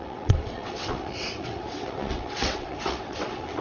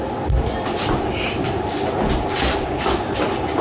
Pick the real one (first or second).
second